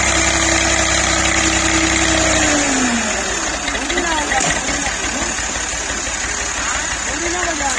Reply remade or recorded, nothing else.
recorded